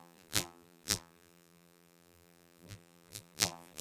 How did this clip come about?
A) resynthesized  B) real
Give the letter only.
A